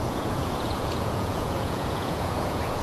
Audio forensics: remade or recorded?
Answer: remade